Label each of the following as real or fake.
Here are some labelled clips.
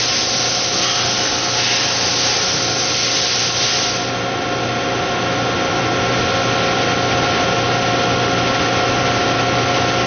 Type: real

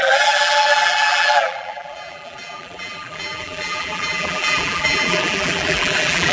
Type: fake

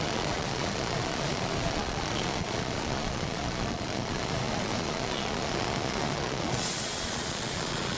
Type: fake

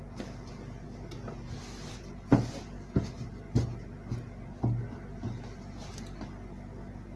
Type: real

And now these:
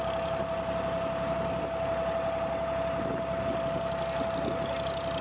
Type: real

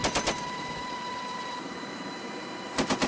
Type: fake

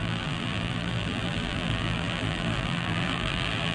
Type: fake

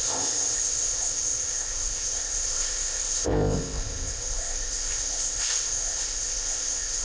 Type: fake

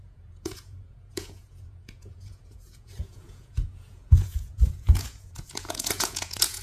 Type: fake